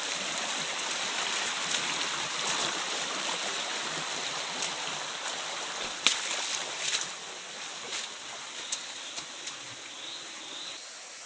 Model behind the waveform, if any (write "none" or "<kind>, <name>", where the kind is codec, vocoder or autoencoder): none